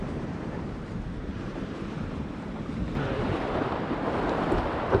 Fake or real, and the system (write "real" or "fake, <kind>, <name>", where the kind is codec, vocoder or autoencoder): fake, vocoder, BigVGAN v2